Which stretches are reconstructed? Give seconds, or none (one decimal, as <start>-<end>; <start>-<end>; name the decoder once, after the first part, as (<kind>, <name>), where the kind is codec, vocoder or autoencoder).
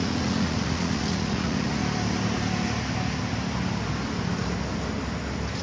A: 0.0-1.8 (vocoder, Vocos)